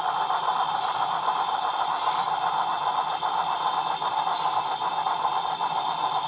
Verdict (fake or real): fake